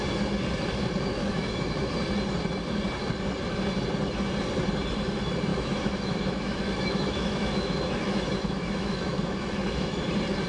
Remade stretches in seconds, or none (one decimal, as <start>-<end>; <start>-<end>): 1.1-1.9; 5.5-10.0